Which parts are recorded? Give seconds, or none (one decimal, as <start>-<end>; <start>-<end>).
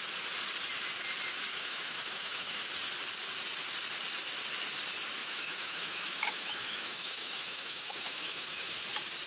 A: 0.0-1.5; 2.6-5.2; 8.8-9.3